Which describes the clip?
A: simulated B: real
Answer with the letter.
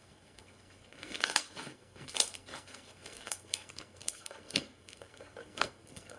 A